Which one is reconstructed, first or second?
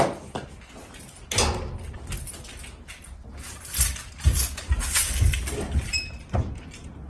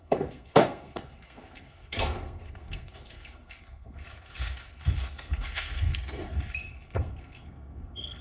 second